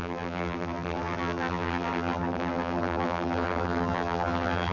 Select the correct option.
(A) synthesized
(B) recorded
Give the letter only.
A